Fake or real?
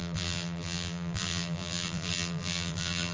fake